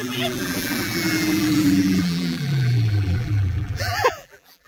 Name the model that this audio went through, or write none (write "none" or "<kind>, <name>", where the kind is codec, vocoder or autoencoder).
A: vocoder, BigVGAN v2